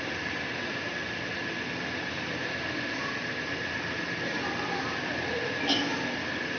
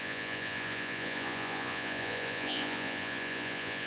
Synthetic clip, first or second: second